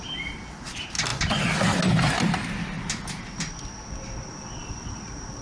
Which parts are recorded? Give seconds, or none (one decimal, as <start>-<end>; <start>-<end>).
0.0-5.4